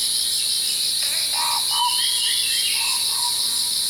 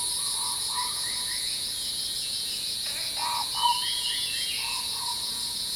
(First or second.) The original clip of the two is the first